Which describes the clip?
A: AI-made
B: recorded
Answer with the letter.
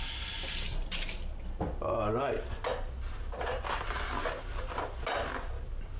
B